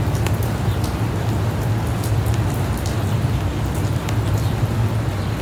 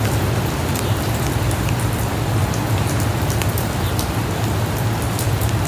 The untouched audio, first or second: first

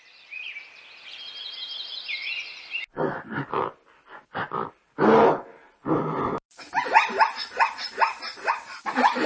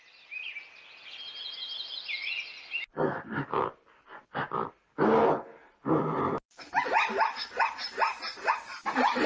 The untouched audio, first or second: second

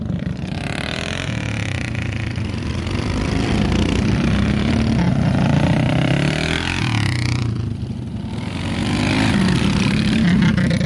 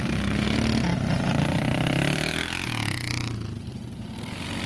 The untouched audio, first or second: second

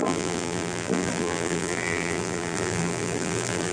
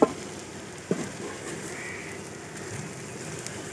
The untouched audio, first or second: second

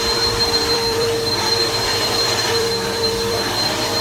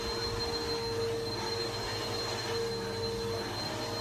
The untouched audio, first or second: second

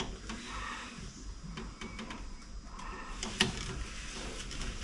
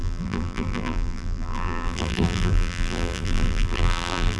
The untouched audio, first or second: first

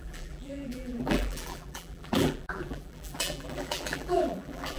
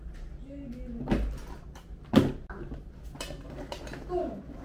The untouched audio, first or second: second